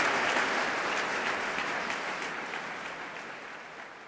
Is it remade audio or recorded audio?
recorded